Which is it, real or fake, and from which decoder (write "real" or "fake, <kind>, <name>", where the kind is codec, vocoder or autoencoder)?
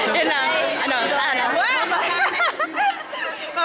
real